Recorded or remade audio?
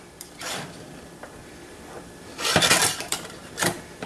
remade